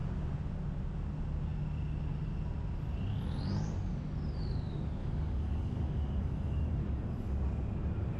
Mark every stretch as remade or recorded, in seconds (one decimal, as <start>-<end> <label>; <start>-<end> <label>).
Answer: 0.0-5.0 recorded; 5.0-7.4 remade; 7.4-8.2 recorded